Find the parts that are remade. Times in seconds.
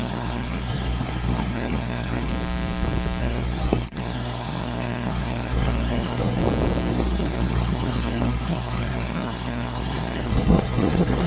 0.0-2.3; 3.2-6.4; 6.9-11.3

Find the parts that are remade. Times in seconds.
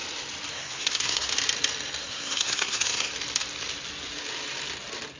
0.5-1.3; 2.0-3.1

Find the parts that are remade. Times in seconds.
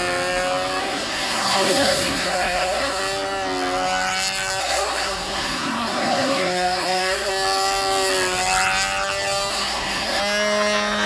0.8-3.0; 4.6-7.3; 9.5-10.2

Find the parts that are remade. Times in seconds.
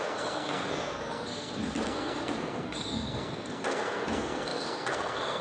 0.0-5.4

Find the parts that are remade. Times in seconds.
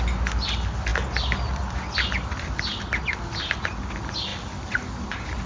none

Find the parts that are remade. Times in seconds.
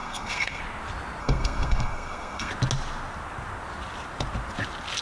0.0-0.6; 1.2-2.5